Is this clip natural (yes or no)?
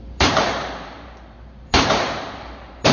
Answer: no